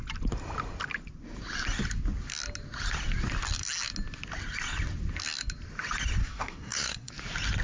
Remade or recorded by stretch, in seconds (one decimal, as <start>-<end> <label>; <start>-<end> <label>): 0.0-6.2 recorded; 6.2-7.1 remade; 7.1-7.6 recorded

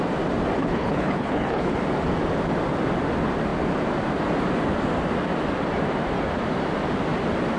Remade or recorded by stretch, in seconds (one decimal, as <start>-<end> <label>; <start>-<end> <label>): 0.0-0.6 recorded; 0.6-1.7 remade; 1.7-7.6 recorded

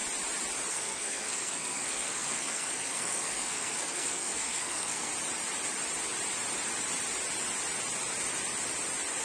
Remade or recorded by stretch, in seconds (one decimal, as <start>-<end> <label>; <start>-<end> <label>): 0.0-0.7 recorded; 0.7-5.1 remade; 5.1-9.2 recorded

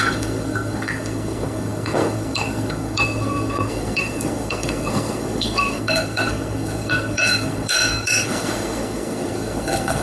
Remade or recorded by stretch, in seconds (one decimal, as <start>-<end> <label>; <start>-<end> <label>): 0.0-10.0 remade

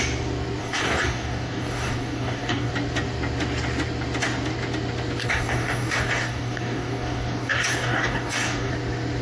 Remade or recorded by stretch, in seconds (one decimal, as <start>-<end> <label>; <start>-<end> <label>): 0.0-0.6 recorded; 0.6-2.7 remade; 2.7-5.2 recorded; 5.2-8.7 remade; 8.7-9.2 recorded

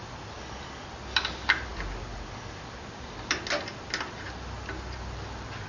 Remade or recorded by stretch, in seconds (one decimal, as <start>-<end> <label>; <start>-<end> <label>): 0.0-5.7 recorded

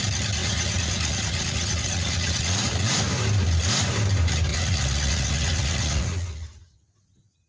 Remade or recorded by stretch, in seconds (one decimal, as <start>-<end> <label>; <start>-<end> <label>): 0.0-0.4 recorded; 0.4-2.9 remade; 2.9-4.5 recorded; 4.5-7.5 remade

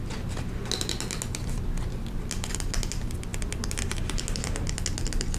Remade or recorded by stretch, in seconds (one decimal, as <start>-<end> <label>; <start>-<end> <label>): 0.0-3.3 recorded; 3.3-4.4 remade; 4.4-5.4 recorded